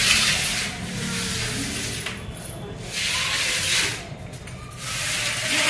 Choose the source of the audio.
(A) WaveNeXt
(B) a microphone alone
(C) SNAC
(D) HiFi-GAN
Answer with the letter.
B